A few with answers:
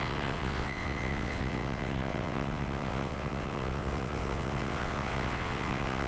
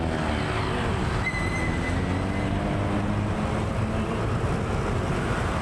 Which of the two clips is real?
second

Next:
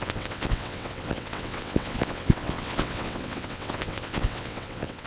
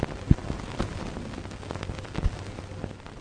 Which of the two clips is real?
second